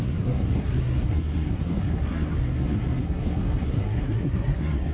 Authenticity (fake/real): fake